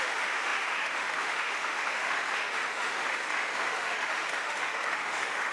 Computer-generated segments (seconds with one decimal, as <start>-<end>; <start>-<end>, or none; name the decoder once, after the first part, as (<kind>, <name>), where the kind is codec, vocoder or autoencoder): 0.0-5.5 (autoencoder, DAC-VAE)